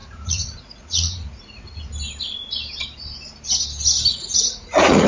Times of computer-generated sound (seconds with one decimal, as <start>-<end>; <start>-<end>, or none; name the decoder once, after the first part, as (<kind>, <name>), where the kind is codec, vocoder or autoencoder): 0.0-1.9 (vocoder, Vocos); 4.1-5.1